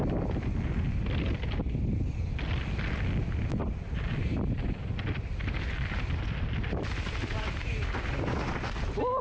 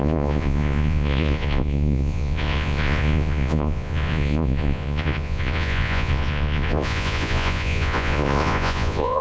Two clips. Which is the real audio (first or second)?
first